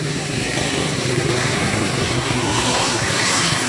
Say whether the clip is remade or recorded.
remade